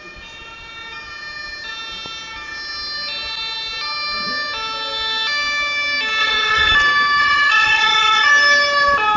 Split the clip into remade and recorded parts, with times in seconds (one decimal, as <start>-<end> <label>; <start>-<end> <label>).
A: 0.0-6.2 recorded; 6.2-6.7 remade; 6.7-7.2 recorded; 7.2-8.3 remade; 8.3-9.2 recorded